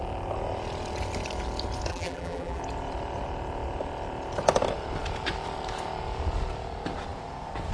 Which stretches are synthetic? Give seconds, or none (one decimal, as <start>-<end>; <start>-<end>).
1.9-2.6